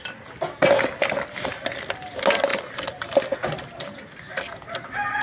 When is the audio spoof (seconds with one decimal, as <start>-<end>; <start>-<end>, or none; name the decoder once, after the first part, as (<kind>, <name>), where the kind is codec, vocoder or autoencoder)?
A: none